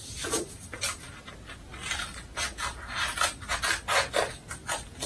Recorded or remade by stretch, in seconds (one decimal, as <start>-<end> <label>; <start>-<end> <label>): 0.0-5.1 recorded